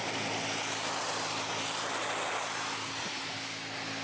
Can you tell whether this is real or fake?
real